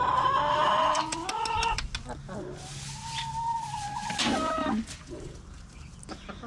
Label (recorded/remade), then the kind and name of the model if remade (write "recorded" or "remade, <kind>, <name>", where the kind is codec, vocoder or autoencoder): recorded